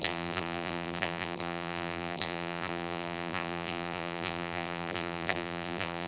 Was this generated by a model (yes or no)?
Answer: yes